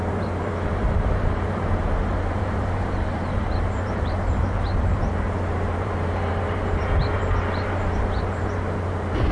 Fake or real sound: fake